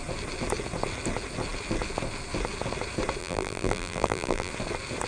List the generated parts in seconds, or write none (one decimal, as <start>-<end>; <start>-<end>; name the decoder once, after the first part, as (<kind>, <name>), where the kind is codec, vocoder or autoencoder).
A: 3.2-4.5 (vocoder, BigVGAN v2)